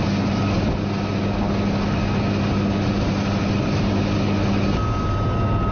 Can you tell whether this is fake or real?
real